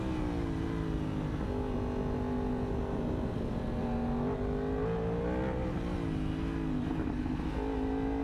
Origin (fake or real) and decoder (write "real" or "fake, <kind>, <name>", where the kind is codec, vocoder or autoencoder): real